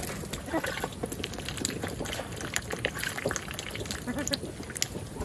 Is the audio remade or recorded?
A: recorded